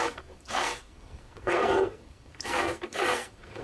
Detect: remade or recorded remade